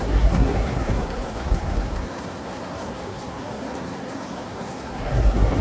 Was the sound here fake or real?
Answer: fake